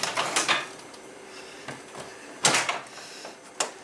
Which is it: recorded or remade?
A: recorded